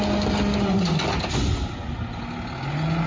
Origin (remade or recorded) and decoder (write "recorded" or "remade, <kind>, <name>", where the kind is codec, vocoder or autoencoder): recorded